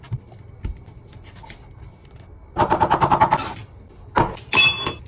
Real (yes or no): yes